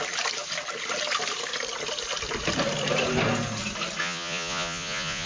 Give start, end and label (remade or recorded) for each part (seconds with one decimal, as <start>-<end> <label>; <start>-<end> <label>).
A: 0.0-4.0 recorded; 4.0-5.3 remade